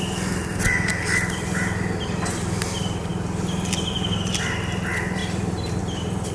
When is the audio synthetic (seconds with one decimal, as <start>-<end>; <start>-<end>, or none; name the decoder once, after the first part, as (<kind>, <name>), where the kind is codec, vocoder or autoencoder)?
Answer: 5.2-5.8 (vocoder, BigVGAN v2)